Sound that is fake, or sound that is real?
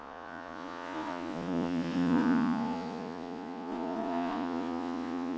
fake